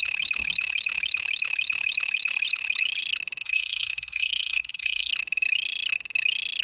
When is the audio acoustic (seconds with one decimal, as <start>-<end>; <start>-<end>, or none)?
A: 0.0-3.4; 5.1-6.6